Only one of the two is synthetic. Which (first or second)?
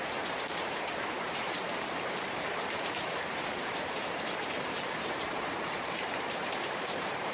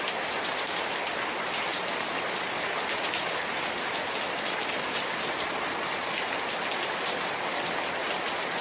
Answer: first